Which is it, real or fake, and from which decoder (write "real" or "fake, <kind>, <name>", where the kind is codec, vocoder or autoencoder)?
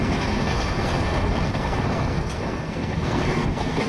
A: fake, codec, SNAC